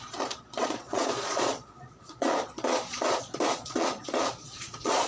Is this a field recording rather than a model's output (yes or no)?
no